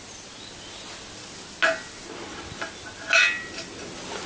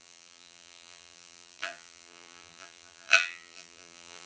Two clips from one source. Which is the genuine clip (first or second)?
first